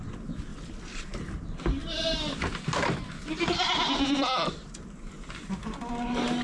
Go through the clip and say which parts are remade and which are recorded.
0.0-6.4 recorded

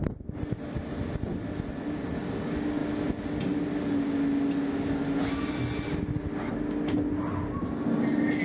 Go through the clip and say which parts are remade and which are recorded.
0.0-8.4 recorded

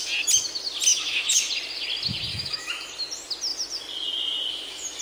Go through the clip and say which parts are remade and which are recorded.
0.0-0.9 recorded; 0.9-1.5 remade; 1.5-2.3 recorded; 2.3-2.9 remade; 2.9-5.0 recorded

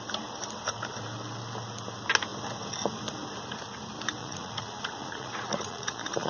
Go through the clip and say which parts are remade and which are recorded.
0.0-4.2 recorded; 4.2-6.3 remade

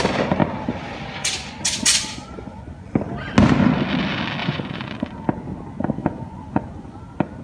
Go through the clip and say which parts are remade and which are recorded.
0.0-1.2 recorded; 1.2-2.9 remade; 2.9-4.4 recorded; 4.4-5.1 remade; 5.1-6.0 recorded; 6.0-7.0 remade; 7.0-7.4 recorded